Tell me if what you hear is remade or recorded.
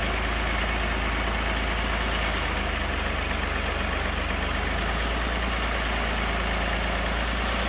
recorded